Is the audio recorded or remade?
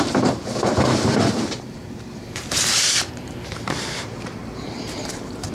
remade